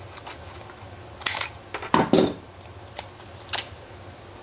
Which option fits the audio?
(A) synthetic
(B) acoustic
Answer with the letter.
B